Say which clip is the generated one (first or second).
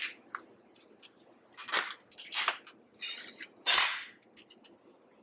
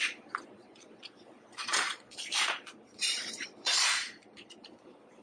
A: second